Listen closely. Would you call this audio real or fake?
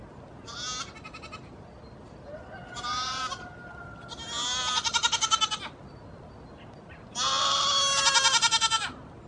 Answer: real